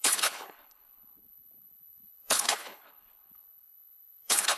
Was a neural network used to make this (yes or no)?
yes